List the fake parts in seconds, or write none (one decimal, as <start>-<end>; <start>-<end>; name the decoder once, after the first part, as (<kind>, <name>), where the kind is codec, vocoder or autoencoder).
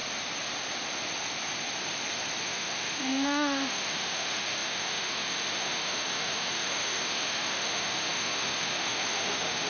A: 2.4-9.7 (autoencoder, DAC-VAE)